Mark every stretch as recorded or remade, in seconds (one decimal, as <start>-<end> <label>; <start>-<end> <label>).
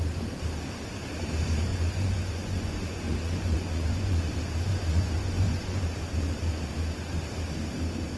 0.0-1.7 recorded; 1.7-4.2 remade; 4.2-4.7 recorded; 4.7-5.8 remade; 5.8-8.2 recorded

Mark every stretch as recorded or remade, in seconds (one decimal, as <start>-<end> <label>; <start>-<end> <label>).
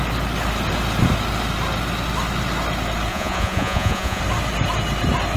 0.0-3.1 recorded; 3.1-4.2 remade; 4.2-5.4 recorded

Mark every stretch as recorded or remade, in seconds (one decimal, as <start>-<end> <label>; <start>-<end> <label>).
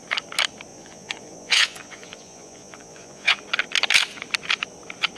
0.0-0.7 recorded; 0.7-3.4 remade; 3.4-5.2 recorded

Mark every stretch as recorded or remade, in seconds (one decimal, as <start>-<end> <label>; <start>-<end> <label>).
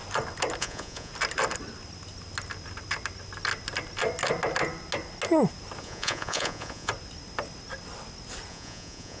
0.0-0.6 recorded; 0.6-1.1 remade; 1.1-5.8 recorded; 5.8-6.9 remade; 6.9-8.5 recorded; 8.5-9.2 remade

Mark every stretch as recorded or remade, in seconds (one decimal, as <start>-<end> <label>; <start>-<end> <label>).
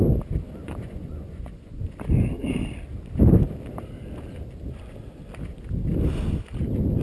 0.0-0.6 recorded; 0.6-1.8 remade; 1.8-7.0 recorded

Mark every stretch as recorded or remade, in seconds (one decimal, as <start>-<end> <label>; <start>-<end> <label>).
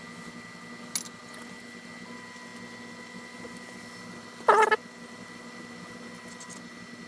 0.0-7.1 recorded